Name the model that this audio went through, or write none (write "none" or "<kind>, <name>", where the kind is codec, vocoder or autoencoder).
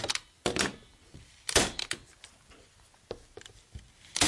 none